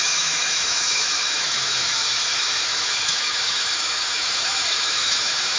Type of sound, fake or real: fake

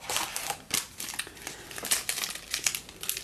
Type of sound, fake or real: real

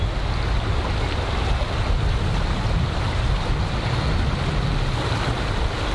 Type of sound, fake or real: real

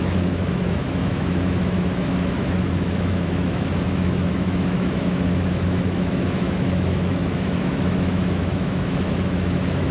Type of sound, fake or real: fake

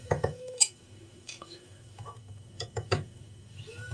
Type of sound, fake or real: fake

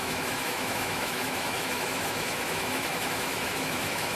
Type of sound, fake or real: fake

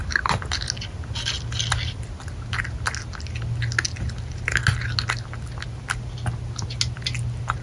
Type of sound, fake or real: real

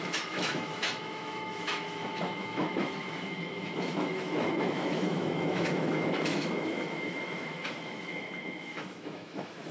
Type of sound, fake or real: fake